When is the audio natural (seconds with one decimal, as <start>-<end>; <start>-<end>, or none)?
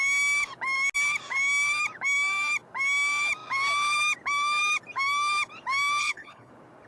0.0-6.0; 6.5-6.9